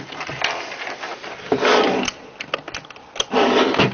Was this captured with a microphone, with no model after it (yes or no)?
yes